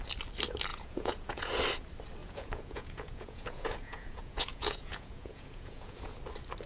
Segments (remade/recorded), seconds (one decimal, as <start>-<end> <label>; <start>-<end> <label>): 0.0-0.7 recorded; 0.7-1.5 remade; 1.5-2.2 recorded; 2.2-6.2 remade; 6.2-6.7 recorded